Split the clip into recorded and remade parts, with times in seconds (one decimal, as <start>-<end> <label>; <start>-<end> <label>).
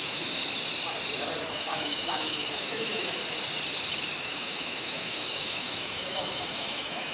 0.0-0.4 remade; 0.4-1.5 recorded; 1.5-3.2 remade; 3.2-4.2 recorded; 4.2-7.1 remade